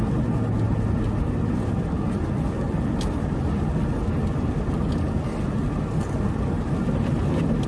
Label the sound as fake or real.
real